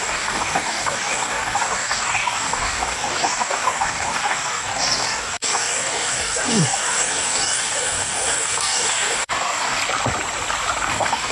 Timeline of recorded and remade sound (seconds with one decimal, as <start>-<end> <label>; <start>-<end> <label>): 0.0-9.8 remade; 9.8-10.9 recorded; 10.9-11.3 remade